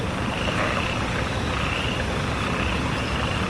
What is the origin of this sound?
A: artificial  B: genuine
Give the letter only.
B